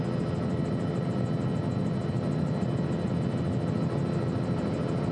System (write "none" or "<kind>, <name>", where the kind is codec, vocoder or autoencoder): none